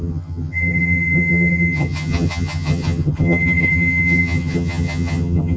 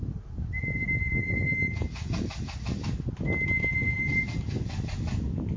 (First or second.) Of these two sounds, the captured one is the second